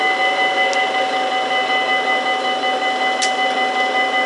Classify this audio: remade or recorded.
recorded